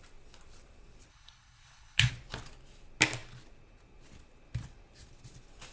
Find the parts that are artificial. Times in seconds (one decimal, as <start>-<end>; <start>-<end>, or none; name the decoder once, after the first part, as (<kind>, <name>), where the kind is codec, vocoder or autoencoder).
1.1-2.1 (codec, HILCodec)

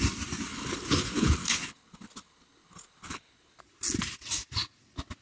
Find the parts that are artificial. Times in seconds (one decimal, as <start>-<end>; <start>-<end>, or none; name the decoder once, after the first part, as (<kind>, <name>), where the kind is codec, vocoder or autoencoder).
0.5-3.6 (codec, HILCodec)

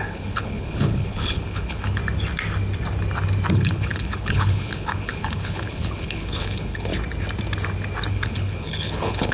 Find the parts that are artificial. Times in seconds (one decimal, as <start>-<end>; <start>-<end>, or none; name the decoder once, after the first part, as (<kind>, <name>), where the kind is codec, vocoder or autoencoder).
0.0-2.0 (codec, HILCodec); 3.5-6.9; 8.1-9.3

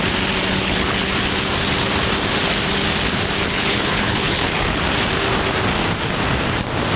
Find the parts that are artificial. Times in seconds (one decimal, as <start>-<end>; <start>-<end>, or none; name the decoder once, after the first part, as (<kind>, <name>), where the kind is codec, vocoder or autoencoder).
0.5-1.1 (codec, HILCodec); 3.4-4.8

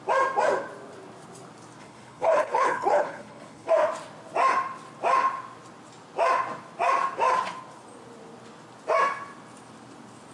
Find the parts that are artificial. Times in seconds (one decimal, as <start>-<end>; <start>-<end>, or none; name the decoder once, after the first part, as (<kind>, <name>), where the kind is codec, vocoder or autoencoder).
1.8-3.7 (codec, HILCodec)

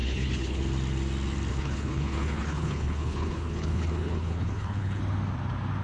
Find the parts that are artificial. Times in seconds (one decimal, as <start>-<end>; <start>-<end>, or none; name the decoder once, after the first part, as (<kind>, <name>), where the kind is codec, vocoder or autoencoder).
0.0-0.6 (codec, HILCodec); 1.5-5.0

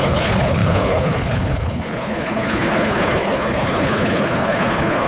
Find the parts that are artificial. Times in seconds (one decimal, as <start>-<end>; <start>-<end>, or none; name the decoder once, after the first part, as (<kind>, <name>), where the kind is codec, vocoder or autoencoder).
0.0-5.1 (codec, HILCodec)